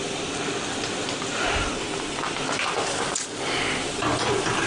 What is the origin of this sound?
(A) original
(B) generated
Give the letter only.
A